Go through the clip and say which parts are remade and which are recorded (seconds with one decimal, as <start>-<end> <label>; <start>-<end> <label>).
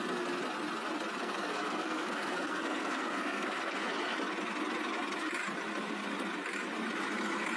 0.0-1.2 recorded; 1.2-3.9 remade; 3.9-7.6 recorded